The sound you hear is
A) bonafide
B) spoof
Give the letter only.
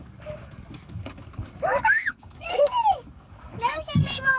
B